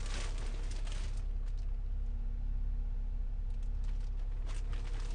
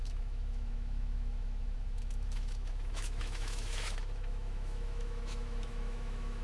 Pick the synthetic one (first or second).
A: second